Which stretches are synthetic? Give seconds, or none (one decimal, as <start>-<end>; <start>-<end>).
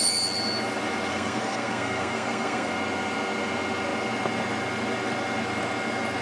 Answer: 1.1-2.7